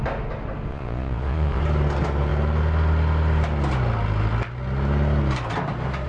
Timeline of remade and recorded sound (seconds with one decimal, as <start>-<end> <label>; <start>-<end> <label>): 0.0-0.7 recorded; 0.7-1.6 remade; 1.6-6.1 recorded